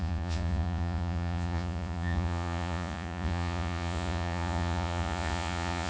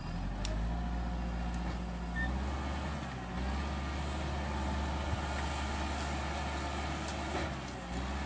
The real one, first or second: second